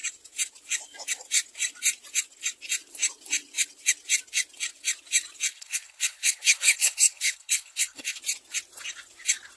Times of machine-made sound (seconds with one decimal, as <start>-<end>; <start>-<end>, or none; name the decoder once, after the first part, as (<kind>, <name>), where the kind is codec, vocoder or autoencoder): 5.5-8.2 (codec, HILCodec)